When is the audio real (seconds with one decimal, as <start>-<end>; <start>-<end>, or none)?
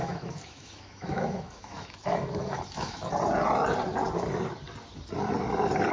3.1-5.9